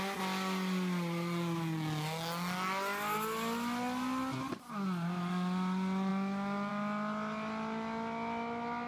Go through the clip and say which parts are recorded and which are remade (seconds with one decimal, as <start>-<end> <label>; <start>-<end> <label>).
0.0-8.9 recorded